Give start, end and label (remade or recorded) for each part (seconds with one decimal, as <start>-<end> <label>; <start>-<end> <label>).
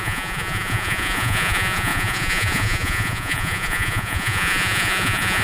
0.0-5.4 remade